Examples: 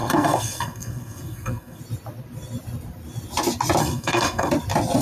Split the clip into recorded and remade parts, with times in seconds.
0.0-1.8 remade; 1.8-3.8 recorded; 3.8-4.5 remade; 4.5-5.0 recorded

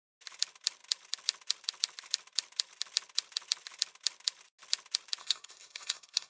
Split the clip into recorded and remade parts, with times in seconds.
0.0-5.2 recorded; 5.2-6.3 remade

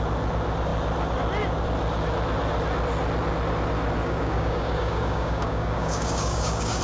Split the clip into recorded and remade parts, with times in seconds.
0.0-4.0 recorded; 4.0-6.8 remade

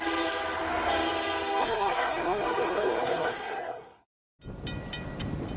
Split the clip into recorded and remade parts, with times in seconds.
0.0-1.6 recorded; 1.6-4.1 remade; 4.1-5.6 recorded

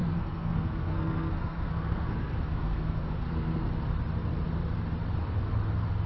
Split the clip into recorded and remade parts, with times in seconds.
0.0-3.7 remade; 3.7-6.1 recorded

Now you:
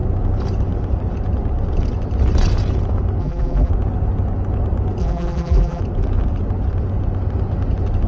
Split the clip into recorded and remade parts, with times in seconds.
0.0-3.2 recorded; 3.2-3.7 remade; 3.7-5.0 recorded; 5.0-5.8 remade; 5.8-8.1 recorded